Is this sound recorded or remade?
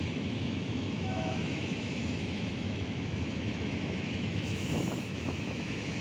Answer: remade